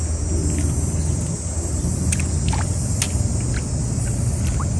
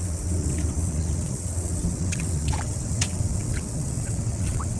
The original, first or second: first